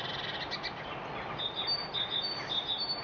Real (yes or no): yes